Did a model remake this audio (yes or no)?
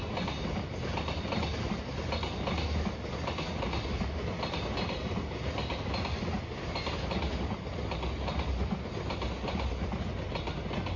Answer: no